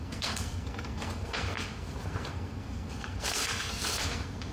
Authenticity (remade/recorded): remade